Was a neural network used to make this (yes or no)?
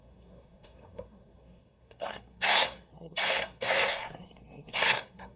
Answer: yes